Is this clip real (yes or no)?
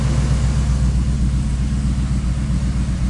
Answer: yes